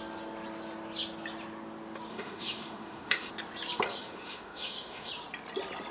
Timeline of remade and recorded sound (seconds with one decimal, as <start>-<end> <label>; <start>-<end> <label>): 0.0-2.1 recorded; 2.1-3.3 remade; 3.3-3.9 recorded; 3.9-5.1 remade; 5.1-5.9 recorded